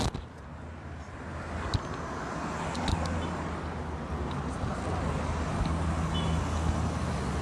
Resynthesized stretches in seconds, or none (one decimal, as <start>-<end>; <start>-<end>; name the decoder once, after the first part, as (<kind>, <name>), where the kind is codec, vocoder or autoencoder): none